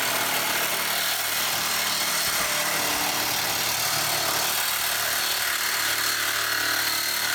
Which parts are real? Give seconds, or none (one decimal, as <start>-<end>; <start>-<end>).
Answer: 0.0-7.3